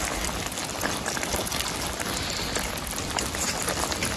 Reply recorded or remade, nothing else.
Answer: recorded